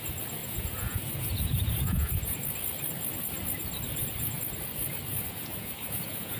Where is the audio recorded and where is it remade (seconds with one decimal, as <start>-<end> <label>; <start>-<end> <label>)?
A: 0.0-0.4 recorded; 0.4-2.4 remade; 2.4-3.9 recorded; 3.9-4.4 remade; 4.4-5.1 recorded; 5.1-6.4 remade